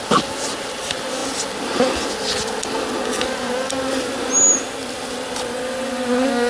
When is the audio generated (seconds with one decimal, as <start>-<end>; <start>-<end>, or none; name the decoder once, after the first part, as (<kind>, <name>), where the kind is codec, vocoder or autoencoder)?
none